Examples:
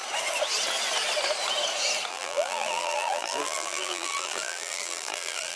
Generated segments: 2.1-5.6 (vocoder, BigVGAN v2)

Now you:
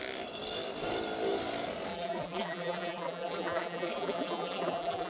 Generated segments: 1.9-5.1 (vocoder, BigVGAN v2)

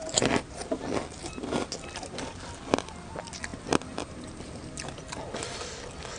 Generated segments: none

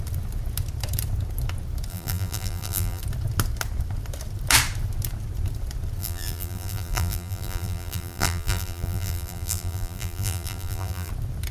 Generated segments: 1.9-3.0 (vocoder, BigVGAN v2); 6.0-11.1

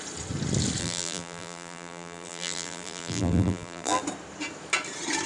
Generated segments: 0.8-4.0 (vocoder, BigVGAN v2)

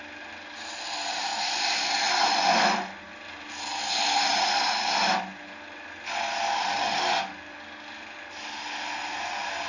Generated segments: 1.3-3.9 (vocoder, BigVGAN v2)

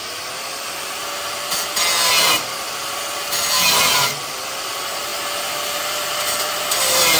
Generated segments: 0.0-1.0 (vocoder, BigVGAN v2); 2.2-5.1; 5.6-7.2